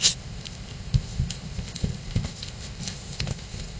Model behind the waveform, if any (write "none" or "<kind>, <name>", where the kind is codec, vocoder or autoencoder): codec, ZipCodec